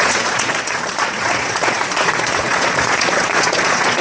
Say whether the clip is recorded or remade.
remade